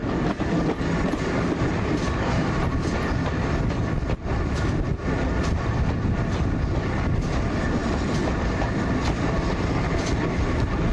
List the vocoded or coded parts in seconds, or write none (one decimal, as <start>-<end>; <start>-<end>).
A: none